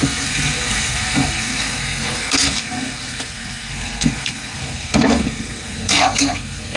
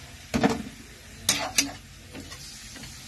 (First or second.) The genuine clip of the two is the second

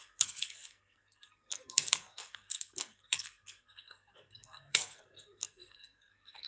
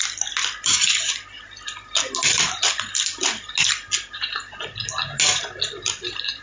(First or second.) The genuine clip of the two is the second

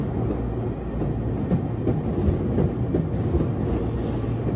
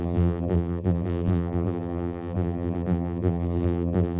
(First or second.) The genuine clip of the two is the first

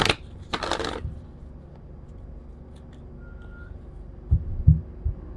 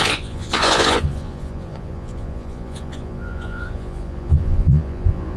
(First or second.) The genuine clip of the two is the first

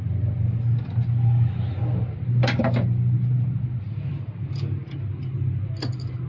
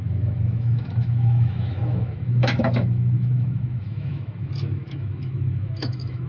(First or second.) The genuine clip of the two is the first